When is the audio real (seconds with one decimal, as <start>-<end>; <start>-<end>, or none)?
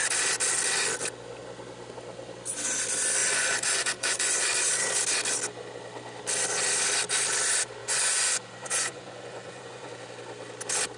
0.0-3.2; 4.4-7.8; 9.9-11.0